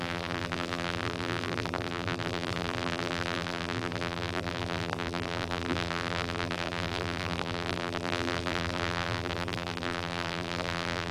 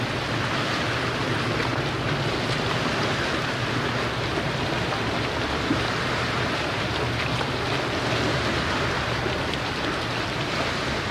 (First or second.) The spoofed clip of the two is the first